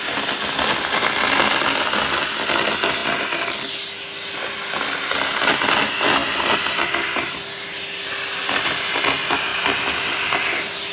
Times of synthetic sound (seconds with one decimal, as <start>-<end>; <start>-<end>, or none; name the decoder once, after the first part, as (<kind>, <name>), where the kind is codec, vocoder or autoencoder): none